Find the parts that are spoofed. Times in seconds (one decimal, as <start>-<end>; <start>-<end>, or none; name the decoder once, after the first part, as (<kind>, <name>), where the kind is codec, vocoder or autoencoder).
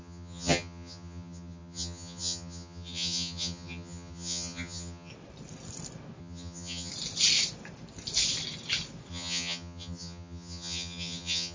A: 0.0-5.1 (vocoder, HiFi-GAN); 6.2-6.9; 9.1-11.5